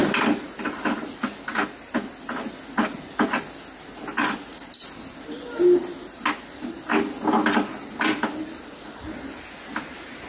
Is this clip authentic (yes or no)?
yes